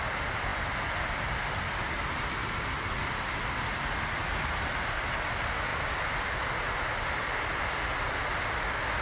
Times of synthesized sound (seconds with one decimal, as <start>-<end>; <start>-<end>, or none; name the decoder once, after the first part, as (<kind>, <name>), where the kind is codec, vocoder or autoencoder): none